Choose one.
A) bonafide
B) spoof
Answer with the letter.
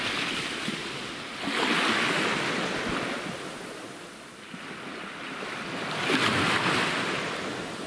A